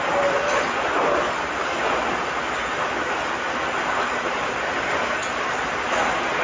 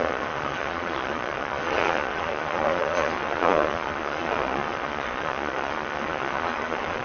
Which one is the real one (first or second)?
first